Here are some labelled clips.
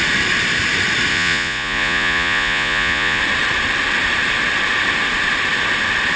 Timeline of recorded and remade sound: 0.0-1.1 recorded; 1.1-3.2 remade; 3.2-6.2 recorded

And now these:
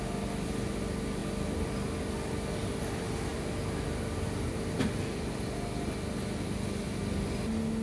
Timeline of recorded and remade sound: 0.0-7.8 recorded

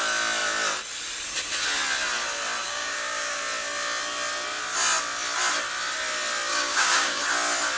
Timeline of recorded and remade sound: 0.0-2.6 recorded; 2.6-3.4 remade; 3.4-6.5 recorded; 6.5-7.2 remade; 7.2-7.8 recorded

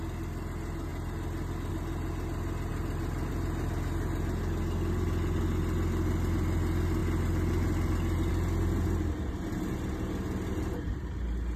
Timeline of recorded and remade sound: 0.0-11.6 recorded